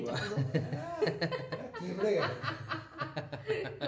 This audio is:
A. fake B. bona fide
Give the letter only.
B